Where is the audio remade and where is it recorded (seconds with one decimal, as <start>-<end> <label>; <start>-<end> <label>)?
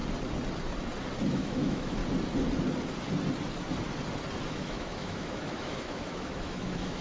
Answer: 0.0-1.3 recorded; 1.3-2.0 remade; 2.0-4.5 recorded; 4.5-7.0 remade